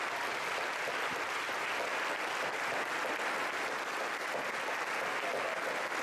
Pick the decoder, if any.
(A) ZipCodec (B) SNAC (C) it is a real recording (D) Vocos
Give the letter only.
C